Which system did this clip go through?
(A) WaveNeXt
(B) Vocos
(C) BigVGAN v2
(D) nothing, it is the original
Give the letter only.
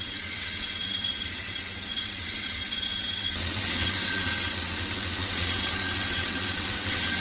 A